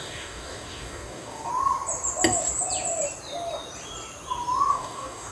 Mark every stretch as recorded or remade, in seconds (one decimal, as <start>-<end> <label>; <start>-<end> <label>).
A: 0.0-1.5 remade; 1.5-4.7 recorded; 4.7-5.3 remade